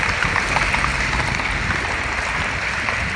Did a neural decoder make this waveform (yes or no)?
no